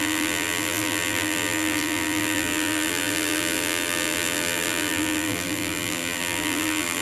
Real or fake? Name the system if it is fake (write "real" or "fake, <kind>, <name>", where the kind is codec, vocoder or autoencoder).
fake, vocoder, BigVGAN v2